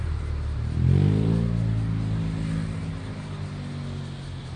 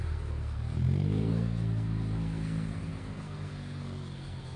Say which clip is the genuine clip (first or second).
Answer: first